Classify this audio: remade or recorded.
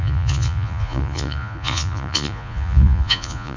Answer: remade